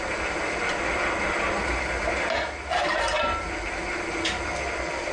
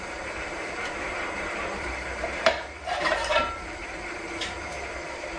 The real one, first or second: first